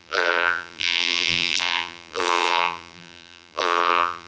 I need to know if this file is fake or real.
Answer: fake